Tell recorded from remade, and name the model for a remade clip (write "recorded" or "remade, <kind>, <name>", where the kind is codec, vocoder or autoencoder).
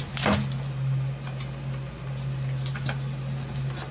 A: recorded